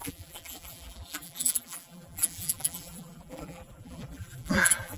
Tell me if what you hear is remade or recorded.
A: remade